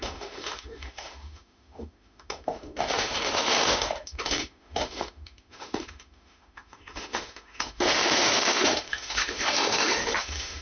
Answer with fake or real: fake